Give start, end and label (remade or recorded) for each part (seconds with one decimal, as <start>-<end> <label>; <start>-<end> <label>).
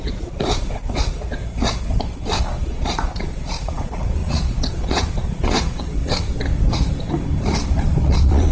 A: 0.0-1.4 remade; 1.4-2.4 recorded; 2.4-6.0 remade; 6.0-8.0 recorded; 8.0-8.5 remade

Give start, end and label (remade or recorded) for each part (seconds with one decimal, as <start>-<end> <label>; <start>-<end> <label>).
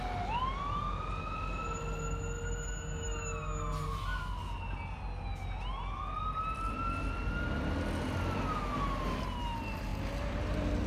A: 0.0-10.9 recorded